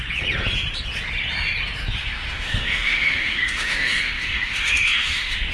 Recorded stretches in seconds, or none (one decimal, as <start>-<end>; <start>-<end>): 0.0-2.0